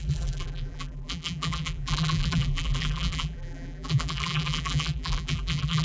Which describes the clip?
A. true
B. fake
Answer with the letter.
B